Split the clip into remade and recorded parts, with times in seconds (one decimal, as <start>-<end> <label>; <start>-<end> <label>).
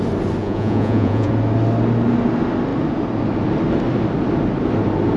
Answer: 0.0-0.4 recorded; 0.4-1.3 remade; 1.3-5.2 recorded